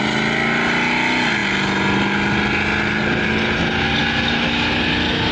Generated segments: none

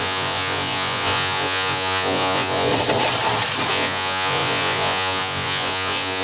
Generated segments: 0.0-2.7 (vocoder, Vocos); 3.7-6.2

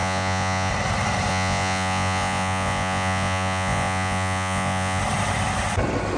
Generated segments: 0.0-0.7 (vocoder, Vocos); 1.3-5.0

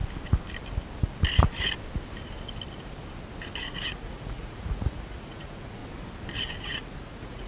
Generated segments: 3.7-5.8 (vocoder, Vocos); 6.6-7.5

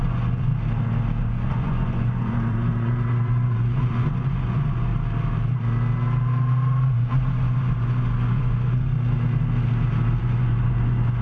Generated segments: 0.0-0.5 (vocoder, Vocos); 1.2-4.9; 6.9-8.9; 10.2-11.2

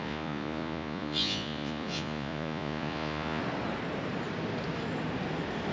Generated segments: 0.0-3.4 (vocoder, Vocos)

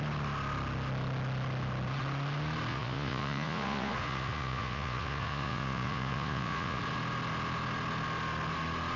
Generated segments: 2.7-6.8 (vocoder, Vocos)